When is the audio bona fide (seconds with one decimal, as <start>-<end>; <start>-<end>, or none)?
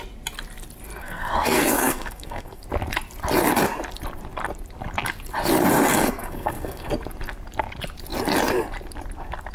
0.0-1.0; 2.6-5.9; 6.9-9.5